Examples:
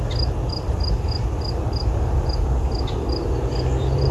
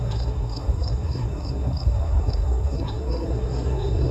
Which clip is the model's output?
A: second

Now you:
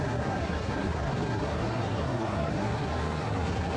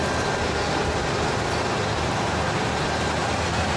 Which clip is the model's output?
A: first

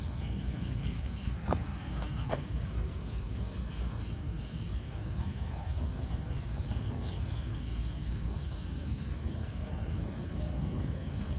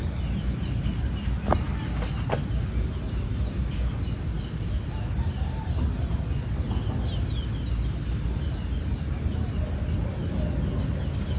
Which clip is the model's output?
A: first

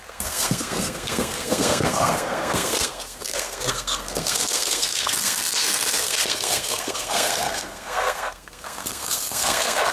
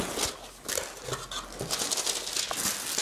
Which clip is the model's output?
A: first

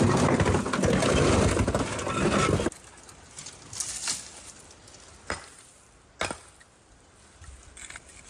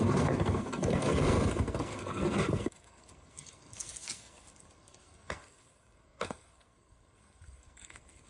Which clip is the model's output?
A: second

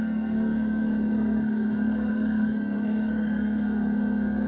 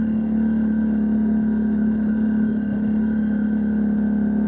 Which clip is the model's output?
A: first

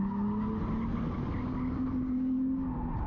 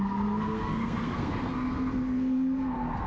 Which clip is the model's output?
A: second